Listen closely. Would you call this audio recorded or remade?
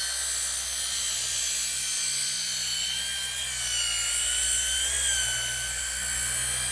recorded